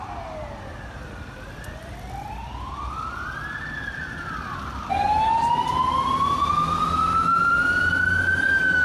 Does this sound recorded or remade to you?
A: recorded